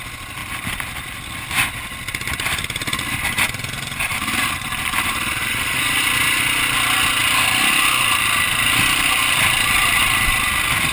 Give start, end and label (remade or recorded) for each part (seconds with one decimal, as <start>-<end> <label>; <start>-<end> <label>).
0.0-0.4 recorded; 0.4-1.5 remade; 1.5-4.1 recorded; 4.1-6.4 remade; 6.4-7.2 recorded; 7.2-10.0 remade; 10.0-10.9 recorded